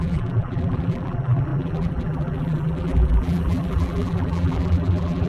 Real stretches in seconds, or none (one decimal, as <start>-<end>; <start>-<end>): none